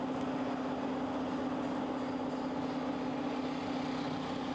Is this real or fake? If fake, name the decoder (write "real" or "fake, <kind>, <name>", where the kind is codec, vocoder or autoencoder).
real